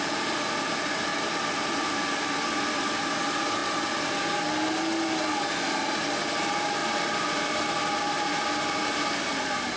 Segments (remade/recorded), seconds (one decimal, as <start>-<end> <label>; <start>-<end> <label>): 0.0-1.1 remade; 1.1-2.4 recorded; 2.4-3.6 remade; 3.6-6.2 recorded; 6.2-9.8 remade